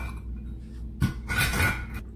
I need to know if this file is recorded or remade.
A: recorded